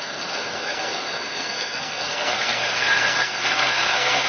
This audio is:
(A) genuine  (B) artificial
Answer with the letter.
B